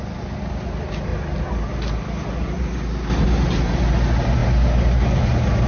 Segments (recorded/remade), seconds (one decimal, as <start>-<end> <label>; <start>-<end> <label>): 0.0-5.7 recorded